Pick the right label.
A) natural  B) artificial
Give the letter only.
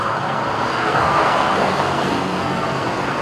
B